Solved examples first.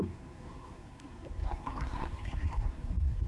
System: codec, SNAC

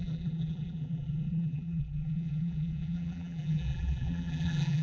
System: vocoder, BigVGAN v2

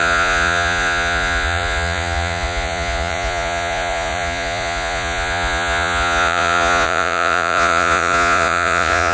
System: vocoder, Vocos